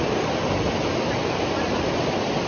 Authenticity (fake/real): real